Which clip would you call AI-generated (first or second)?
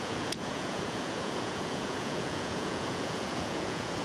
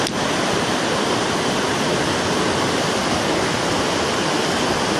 first